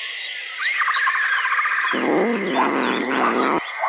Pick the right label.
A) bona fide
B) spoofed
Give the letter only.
A